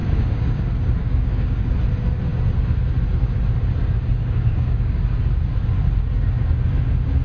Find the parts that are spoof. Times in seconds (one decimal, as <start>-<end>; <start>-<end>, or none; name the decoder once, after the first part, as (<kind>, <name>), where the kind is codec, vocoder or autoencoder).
0.0-0.6 (codec, DAC); 1.0-1.6; 4.2-5.0